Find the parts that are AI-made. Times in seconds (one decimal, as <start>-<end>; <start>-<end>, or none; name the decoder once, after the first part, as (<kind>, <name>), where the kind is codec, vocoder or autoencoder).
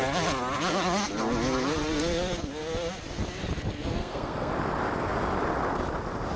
4.0-4.5 (codec, SNAC)